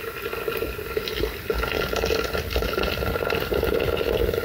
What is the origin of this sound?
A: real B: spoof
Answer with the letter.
A